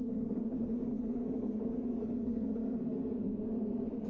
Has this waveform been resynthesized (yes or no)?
yes